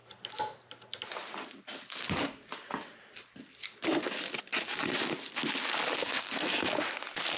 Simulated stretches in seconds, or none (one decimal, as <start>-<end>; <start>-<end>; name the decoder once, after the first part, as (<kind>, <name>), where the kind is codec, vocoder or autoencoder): 6.0-6.8 (codec, SNAC)